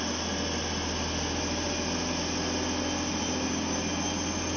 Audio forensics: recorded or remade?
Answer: recorded